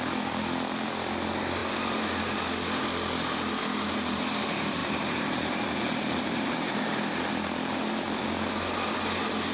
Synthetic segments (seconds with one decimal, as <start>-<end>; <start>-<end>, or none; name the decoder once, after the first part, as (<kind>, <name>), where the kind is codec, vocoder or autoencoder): none